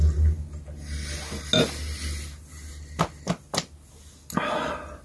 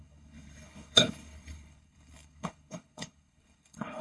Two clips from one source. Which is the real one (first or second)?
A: first